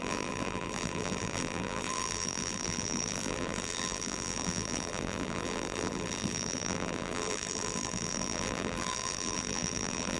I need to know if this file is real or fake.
fake